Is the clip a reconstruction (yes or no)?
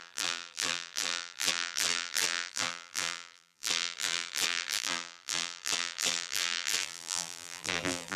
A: yes